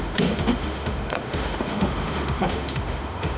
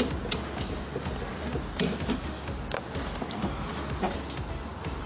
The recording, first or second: second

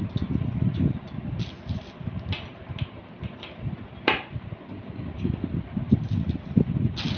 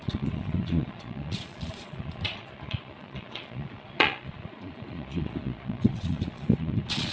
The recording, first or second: first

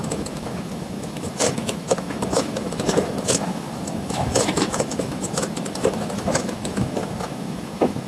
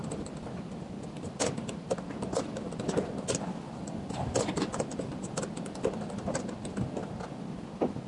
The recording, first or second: second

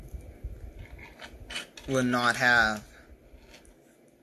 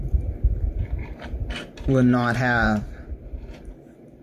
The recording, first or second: first